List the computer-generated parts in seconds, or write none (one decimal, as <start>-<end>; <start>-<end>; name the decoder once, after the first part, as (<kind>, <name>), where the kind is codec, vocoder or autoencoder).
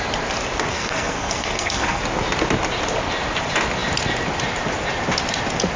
0.7-2.0 (codec, SNAC)